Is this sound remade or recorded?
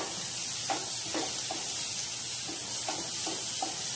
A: recorded